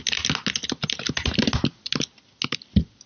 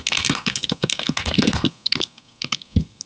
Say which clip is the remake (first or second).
second